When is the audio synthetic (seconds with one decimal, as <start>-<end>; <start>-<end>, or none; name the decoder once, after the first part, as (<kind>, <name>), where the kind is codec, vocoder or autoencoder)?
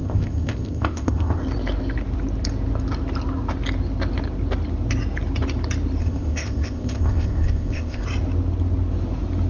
0.0-1.4 (codec, ZipCodec); 6.0-8.0